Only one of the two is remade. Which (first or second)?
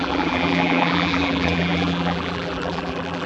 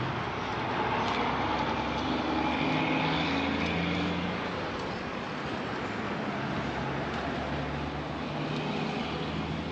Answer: first